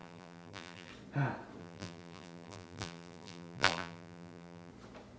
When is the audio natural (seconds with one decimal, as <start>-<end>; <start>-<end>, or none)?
0.9-1.6; 4.7-5.2